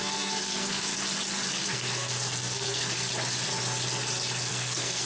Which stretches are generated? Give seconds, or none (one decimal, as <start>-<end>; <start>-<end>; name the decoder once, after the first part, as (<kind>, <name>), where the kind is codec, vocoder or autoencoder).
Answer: 0.0-0.9 (codec, SNAC); 1.6-3.1; 4.5-5.1